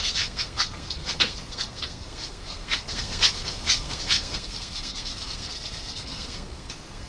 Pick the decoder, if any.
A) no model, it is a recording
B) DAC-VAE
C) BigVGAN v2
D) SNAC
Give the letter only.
D